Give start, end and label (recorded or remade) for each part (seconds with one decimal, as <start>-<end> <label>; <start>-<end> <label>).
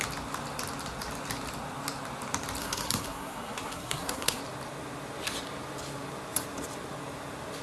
0.0-2.6 recorded; 2.6-4.4 remade; 4.4-7.6 recorded